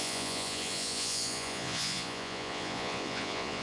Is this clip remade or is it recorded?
remade